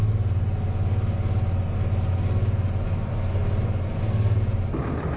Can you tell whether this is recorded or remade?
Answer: recorded